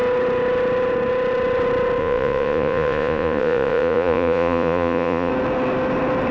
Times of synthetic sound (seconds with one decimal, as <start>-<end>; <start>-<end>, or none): 2.0-5.3